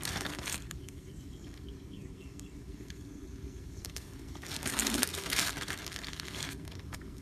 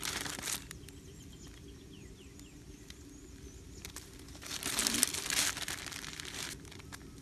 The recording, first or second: second